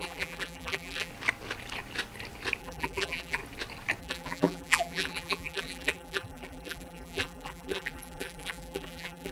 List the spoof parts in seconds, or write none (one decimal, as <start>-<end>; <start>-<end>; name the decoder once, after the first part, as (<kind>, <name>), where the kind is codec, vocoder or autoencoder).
0.0-1.1 (vocoder, BigVGAN v2); 2.6-3.4; 4.0-9.3

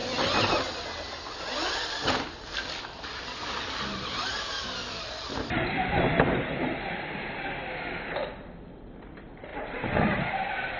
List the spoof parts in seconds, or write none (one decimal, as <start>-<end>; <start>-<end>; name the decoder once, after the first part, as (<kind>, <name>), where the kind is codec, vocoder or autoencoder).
2.8-10.8 (vocoder, BigVGAN v2)

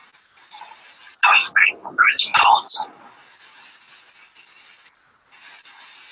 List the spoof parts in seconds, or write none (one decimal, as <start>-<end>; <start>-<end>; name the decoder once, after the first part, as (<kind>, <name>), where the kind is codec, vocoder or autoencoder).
none

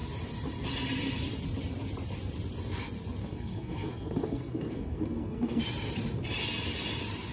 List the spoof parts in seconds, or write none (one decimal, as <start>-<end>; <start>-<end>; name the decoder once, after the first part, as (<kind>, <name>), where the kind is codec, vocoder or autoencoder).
3.2-5.6 (codec, SNAC)

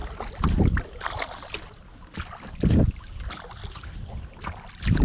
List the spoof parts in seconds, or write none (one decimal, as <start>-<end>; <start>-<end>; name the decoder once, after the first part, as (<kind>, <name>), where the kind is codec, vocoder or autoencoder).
none

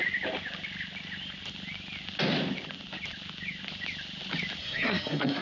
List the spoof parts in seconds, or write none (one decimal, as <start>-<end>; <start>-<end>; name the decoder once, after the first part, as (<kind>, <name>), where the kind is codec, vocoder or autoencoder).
4.6-5.4 (codec, SNAC)